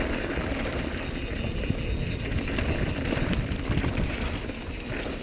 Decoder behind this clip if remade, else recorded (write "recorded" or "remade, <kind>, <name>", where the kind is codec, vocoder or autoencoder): recorded